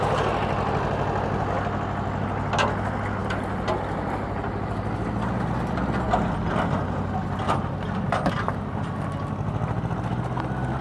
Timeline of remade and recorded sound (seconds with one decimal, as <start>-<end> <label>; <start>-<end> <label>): 0.0-10.8 recorded